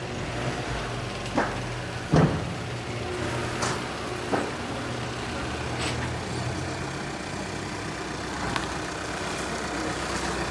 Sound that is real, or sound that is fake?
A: real